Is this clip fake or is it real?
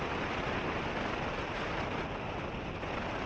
real